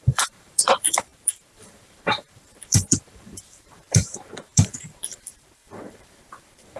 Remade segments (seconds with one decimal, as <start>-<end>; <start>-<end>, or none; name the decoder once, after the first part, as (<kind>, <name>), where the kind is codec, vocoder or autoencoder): 0.0-6.8 (vocoder, BigVGAN v2)